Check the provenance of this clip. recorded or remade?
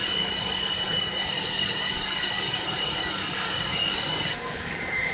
remade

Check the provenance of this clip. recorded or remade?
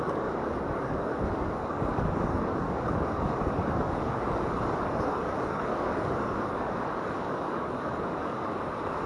remade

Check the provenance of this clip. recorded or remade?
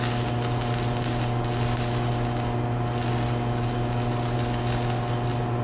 recorded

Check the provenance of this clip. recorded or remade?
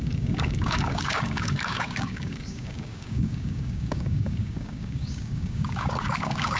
remade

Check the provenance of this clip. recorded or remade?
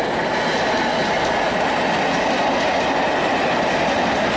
recorded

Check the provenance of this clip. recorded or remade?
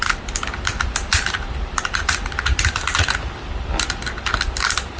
recorded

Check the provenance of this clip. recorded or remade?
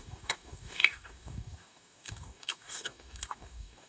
remade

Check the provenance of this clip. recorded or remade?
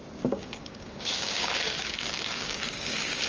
remade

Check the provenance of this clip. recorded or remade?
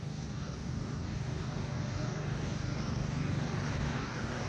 remade